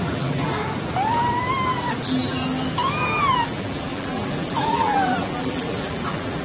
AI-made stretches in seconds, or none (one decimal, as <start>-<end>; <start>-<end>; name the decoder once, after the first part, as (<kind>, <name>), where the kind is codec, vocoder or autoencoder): 0.0-0.6 (vocoder, BigVGAN v2); 1.9-2.4; 3.2-6.4